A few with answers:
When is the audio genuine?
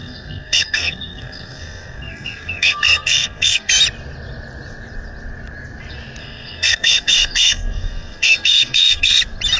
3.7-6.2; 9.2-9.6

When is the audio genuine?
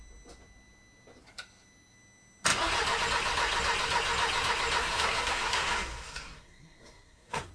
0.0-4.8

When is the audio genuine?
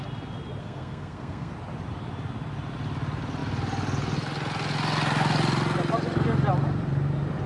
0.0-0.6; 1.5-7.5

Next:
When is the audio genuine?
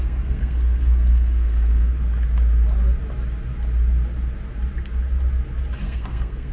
1.9-5.8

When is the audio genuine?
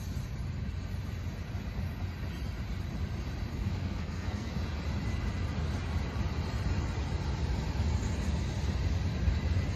0.0-3.5; 4.5-9.8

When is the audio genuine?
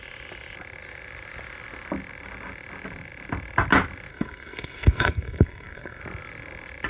0.0-4.1; 6.0-6.9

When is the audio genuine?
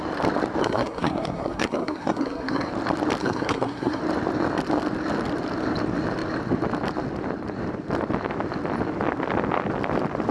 0.0-0.6; 2.7-3.2; 4.0-10.3